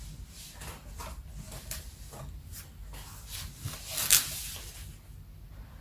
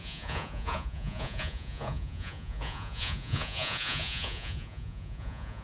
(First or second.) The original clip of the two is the first